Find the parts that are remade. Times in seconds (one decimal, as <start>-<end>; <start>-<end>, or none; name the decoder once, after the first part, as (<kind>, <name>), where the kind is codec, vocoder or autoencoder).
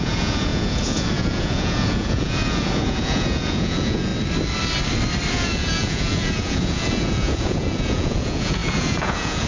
0.0-4.1 (vocoder, Vocos); 5.3-9.5